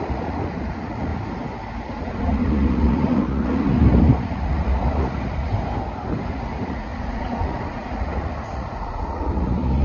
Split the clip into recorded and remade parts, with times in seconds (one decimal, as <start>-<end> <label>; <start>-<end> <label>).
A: 0.0-1.1 remade; 1.1-2.0 recorded; 2.0-5.5 remade; 5.5-6.3 recorded; 6.3-9.8 remade